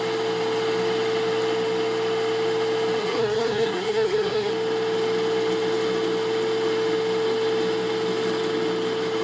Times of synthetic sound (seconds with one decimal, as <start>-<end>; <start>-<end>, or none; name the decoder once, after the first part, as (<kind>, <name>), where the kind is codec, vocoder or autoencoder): 3.0-4.5 (codec, SNAC)